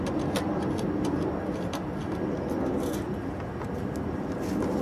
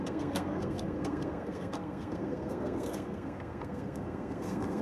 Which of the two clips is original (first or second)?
first